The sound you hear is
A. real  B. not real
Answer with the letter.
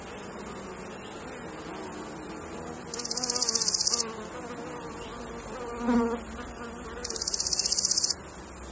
A